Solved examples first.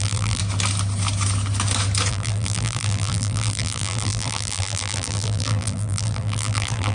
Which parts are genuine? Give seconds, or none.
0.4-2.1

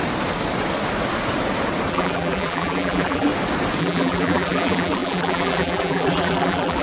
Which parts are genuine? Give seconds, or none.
0.0-1.9; 3.3-3.8

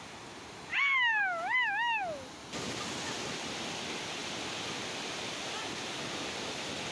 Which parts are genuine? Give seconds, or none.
0.0-6.9

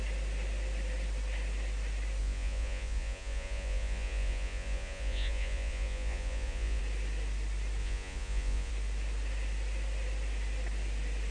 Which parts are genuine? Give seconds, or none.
0.0-2.2; 6.8-7.8; 8.7-11.3

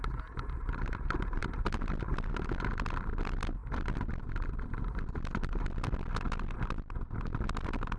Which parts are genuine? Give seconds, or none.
0.0-8.0

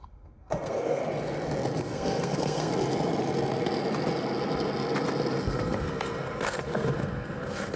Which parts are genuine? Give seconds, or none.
1.0-1.8; 2.7-5.4

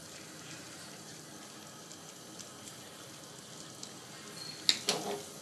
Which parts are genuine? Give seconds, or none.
1.3-5.4